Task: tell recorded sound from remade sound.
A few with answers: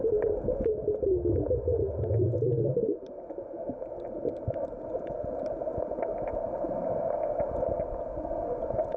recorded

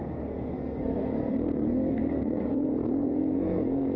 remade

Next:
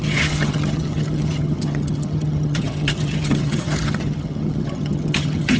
remade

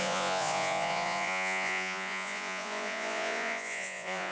remade